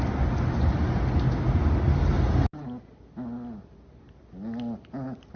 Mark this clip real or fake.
real